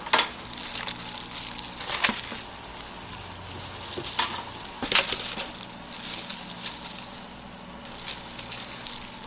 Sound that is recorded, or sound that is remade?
recorded